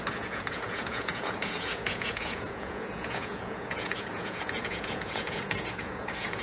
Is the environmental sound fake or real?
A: fake